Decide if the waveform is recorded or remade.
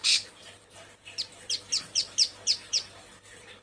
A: remade